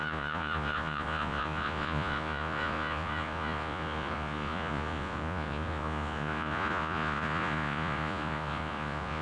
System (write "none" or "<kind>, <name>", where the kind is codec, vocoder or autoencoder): vocoder, Vocos